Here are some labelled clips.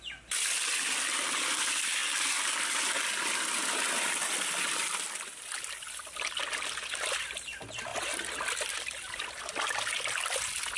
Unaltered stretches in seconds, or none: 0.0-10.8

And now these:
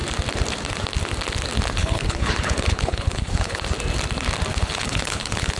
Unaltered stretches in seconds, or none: 0.0-1.8; 3.6-4.5

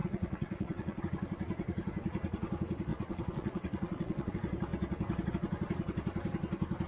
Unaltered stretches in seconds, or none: 1.0-2.9; 4.3-6.9

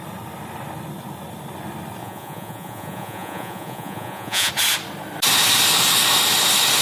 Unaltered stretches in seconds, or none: 0.0-2.0; 4.5-6.8

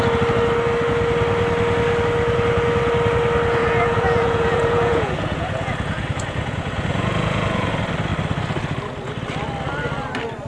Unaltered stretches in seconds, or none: 0.0-3.6; 7.7-10.5